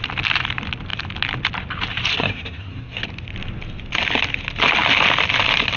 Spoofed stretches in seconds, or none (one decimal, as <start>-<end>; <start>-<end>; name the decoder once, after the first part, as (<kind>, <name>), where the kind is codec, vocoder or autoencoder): 2.2-3.0 (codec, SNAC)